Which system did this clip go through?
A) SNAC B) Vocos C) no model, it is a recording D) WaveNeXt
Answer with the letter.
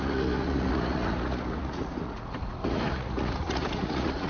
B